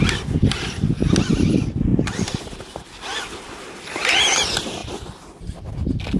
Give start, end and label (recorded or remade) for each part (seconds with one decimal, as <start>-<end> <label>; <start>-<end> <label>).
0.0-6.2 recorded